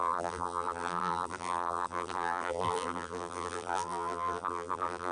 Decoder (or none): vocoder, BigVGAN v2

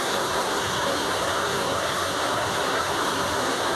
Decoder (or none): codec, SNAC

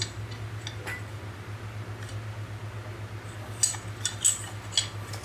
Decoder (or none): none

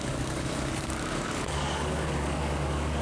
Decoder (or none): codec, DAC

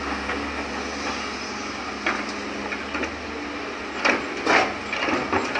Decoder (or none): none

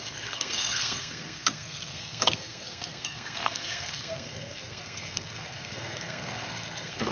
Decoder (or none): codec, SNAC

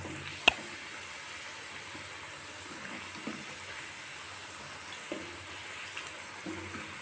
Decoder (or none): none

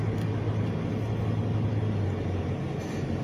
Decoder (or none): none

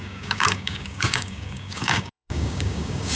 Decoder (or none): codec, DAC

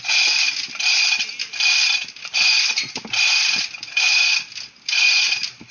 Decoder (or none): none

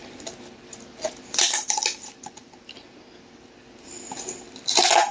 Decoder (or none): none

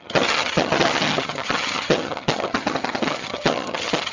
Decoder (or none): vocoder, HiFi-GAN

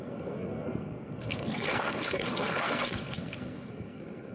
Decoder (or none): codec, SNAC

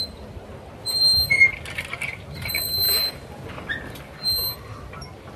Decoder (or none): none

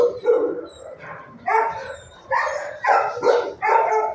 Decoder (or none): vocoder, BigVGAN v2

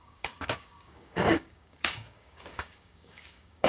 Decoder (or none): codec, DAC